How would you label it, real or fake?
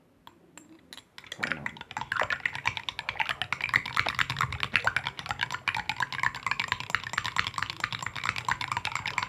real